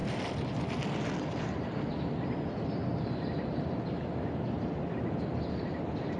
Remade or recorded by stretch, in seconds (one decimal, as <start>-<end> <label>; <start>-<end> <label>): 0.0-6.2 recorded

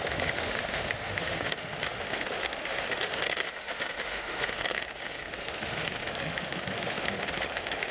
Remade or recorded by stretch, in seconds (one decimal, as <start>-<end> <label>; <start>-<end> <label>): 0.0-7.9 remade

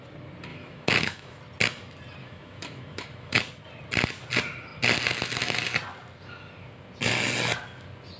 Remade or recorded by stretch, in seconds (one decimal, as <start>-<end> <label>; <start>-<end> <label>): 0.0-0.5 recorded; 0.5-1.4 remade; 1.4-2.2 recorded; 2.2-3.4 remade; 3.4-8.2 recorded

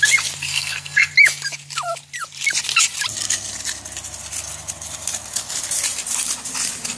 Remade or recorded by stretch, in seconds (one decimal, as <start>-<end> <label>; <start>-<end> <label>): 0.0-0.5 recorded; 0.5-1.1 remade; 1.1-7.0 recorded